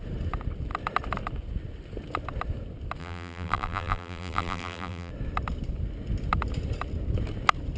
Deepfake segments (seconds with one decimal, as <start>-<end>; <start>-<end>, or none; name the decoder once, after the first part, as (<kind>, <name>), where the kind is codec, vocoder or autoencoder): 3.0-5.1 (vocoder, BigVGAN v2)